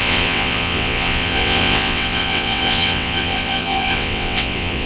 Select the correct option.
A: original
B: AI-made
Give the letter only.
B